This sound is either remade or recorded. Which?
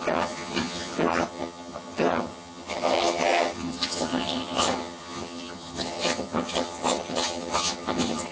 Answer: remade